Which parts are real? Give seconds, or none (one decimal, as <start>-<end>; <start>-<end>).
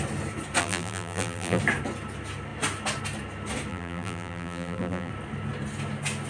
0.0-0.6; 1.6-3.7; 5.1-6.3